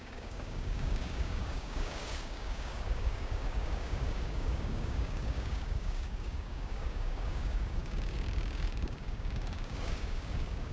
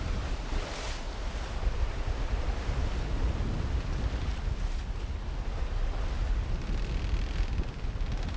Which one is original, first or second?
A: second